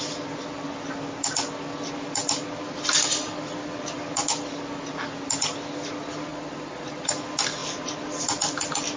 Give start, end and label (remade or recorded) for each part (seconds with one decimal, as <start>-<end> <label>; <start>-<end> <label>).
0.0-6.3 recorded; 6.3-7.1 remade; 7.1-9.0 recorded